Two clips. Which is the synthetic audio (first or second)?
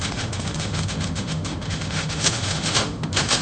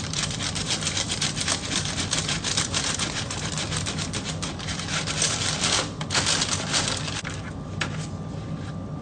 first